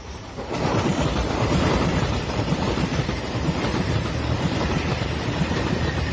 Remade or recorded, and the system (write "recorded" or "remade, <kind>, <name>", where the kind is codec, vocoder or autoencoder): remade, vocoder, BigVGAN v2